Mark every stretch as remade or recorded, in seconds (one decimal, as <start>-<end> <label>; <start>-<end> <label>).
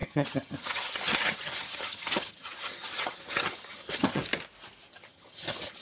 0.0-4.2 remade; 4.2-4.9 recorded; 4.9-5.8 remade